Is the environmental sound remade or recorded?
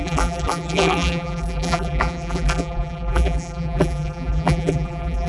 remade